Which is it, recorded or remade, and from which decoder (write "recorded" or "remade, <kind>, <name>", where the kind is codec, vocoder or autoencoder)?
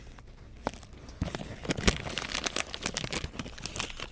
recorded